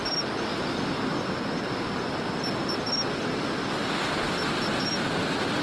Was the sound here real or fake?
real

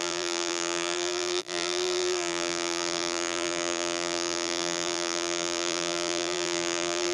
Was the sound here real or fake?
fake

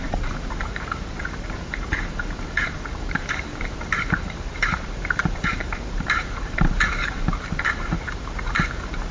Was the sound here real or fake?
fake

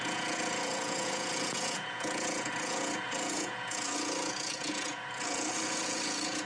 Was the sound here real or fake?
fake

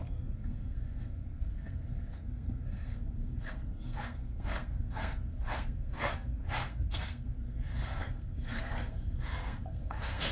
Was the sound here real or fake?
fake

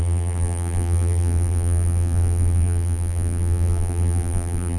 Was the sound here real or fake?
fake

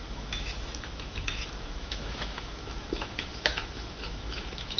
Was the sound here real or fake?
fake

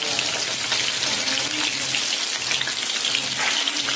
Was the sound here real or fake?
real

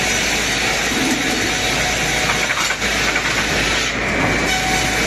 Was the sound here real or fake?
real